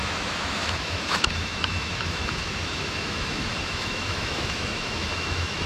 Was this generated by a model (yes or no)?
yes